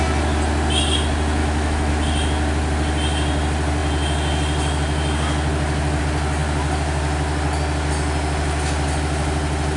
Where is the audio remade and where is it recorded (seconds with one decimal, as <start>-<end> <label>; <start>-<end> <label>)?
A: 0.0-1.4 recorded; 1.4-1.9 remade; 1.9-9.8 recorded